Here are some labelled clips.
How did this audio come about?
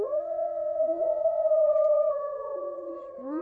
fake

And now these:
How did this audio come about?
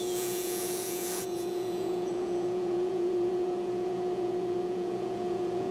fake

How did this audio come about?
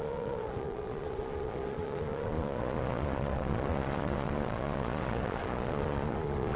fake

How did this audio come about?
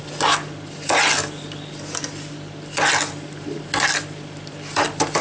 real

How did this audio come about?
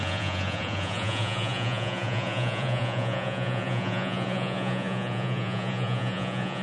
fake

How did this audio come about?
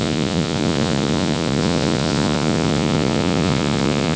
fake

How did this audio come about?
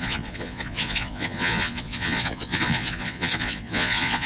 fake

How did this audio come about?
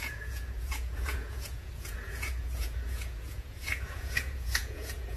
fake